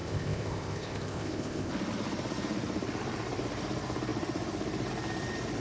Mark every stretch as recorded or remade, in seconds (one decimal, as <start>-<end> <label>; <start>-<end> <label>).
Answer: 0.0-1.7 remade; 1.7-5.6 recorded